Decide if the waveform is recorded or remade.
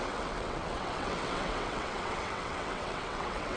remade